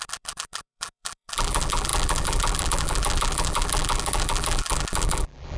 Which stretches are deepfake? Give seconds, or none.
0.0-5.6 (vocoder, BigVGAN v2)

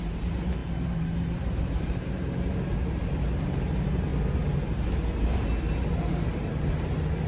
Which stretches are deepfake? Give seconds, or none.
0.0-4.1 (vocoder, BigVGAN v2); 5.9-7.3

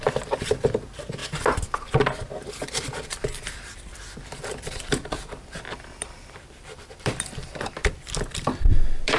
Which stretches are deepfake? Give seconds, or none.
0.0-1.2 (vocoder, BigVGAN v2); 2.5-9.2